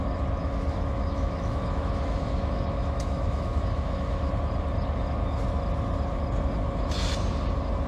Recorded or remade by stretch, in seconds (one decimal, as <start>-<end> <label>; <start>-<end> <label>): 0.0-0.4 recorded; 0.4-4.3 remade; 4.3-7.9 recorded